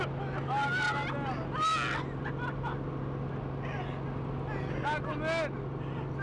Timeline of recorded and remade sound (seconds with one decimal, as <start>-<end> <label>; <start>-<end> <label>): 0.0-6.2 recorded